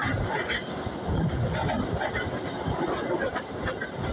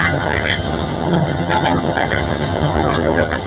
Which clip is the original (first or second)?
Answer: first